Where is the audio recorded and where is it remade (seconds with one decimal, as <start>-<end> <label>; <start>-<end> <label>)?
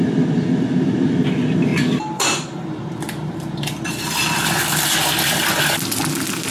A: 0.0-6.5 remade